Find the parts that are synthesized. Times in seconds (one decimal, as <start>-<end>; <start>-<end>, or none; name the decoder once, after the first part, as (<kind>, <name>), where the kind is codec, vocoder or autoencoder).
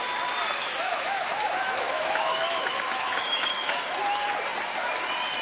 0.6-3.8 (autoencoder, DAC-VAE)